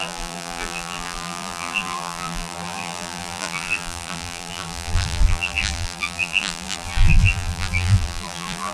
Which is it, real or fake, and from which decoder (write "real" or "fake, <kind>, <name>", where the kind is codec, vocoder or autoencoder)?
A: fake, vocoder, BigVGAN v2